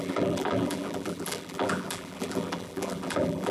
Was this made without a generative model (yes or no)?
no